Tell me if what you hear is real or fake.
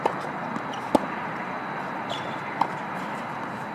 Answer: real